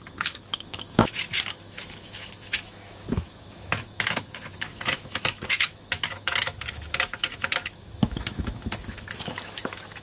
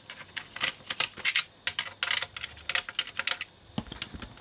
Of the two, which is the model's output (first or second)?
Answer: first